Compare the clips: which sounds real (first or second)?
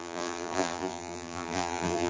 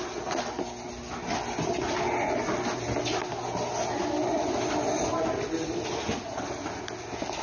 second